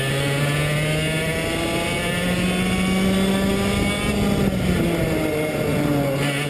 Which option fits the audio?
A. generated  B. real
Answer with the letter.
B